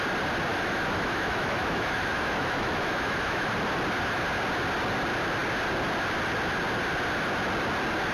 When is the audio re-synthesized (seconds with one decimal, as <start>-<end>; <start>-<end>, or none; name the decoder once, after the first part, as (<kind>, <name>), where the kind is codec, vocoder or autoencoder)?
0.5-3.5 (autoencoder, DAC-VAE)